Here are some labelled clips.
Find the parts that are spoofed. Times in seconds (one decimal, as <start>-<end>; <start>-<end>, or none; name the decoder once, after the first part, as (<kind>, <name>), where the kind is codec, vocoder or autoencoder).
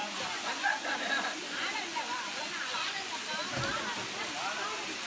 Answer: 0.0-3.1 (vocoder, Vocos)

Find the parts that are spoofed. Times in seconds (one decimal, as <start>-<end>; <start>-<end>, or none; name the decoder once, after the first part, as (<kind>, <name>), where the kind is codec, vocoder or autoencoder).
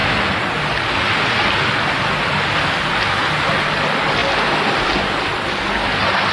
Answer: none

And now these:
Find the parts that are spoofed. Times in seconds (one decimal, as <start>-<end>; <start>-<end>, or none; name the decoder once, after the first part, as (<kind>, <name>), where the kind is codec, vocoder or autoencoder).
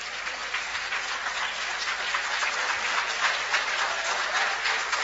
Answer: 0.0-5.0 (vocoder, BigVGAN v2)